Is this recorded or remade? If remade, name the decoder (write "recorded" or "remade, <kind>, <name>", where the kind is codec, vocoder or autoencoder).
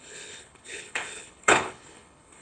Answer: remade, codec, HILCodec